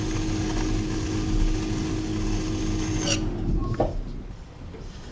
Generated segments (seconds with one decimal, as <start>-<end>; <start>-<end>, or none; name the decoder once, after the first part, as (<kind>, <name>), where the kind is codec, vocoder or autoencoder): none